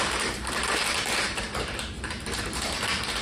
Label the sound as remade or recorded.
remade